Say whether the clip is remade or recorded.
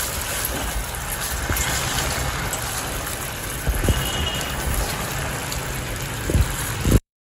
remade